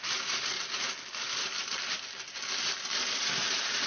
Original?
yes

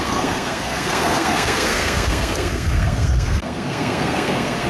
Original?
no